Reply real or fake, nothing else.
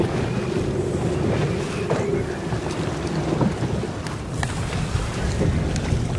real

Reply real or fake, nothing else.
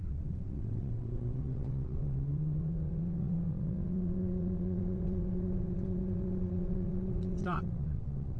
fake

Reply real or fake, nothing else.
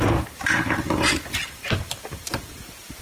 fake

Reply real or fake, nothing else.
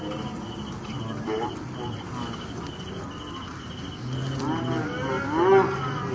real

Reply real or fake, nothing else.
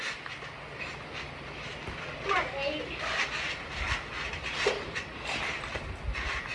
fake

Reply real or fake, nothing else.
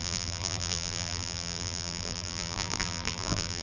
fake